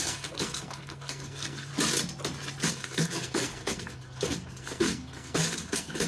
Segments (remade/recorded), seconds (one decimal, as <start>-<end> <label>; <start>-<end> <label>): 0.0-1.7 remade; 1.7-2.7 recorded; 2.7-6.1 remade